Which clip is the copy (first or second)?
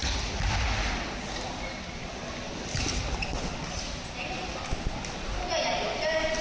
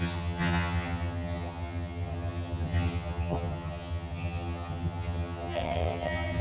second